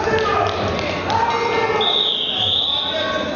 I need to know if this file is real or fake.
real